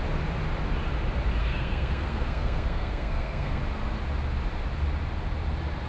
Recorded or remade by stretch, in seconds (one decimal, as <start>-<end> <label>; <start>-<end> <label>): 0.0-1.4 recorded; 1.4-3.6 remade; 3.6-5.9 recorded